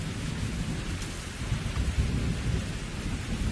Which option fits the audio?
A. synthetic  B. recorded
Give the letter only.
B